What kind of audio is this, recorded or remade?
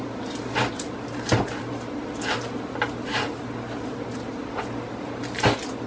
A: recorded